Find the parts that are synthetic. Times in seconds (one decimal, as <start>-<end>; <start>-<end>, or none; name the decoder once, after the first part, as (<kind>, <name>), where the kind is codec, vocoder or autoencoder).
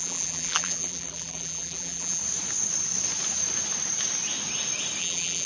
0.0-2.2 (vocoder, BigVGAN v2); 5.0-5.5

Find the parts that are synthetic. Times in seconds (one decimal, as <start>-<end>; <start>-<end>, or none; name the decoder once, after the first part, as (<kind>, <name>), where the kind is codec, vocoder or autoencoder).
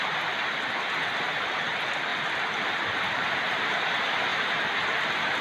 2.1-3.7 (vocoder, BigVGAN v2)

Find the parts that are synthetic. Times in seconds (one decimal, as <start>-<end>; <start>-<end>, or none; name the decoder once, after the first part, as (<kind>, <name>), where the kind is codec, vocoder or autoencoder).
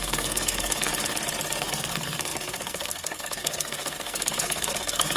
0.0-0.9 (codec, SNAC); 1.5-5.2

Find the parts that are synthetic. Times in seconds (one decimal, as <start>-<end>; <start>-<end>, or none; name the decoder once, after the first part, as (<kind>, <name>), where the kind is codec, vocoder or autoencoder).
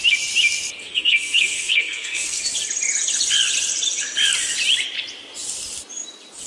0.8-2.4 (codec, SNAC)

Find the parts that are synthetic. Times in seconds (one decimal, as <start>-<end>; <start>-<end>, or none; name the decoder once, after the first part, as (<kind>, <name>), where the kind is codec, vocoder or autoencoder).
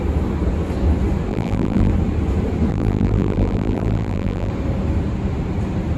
1.3-1.9 (vocoder, BigVGAN v2); 2.7-4.5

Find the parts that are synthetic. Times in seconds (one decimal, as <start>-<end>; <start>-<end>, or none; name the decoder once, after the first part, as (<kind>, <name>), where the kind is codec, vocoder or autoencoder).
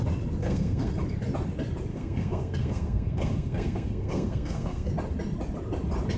0.4-0.9 (codec, SNAC); 1.9-4.9